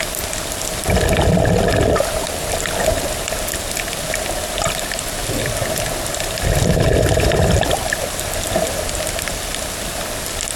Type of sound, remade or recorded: recorded